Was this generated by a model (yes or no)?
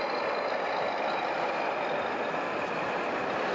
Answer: no